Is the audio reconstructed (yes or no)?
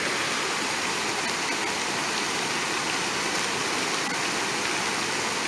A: no